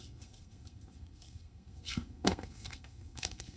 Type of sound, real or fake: fake